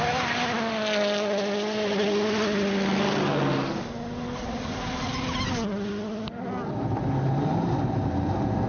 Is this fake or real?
real